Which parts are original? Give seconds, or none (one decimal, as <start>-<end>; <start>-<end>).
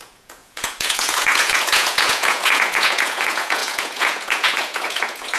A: none